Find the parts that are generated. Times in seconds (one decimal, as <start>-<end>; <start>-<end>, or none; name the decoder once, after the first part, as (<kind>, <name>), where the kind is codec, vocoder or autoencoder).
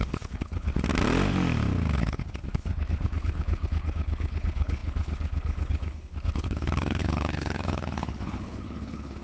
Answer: 0.0-0.7 (codec, HILCodec); 2.0-9.2